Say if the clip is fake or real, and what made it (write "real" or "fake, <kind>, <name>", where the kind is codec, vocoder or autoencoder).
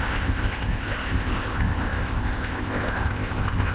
fake, codec, ZipCodec